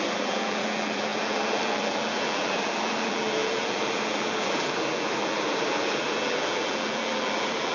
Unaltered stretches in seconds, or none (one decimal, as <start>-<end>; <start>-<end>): none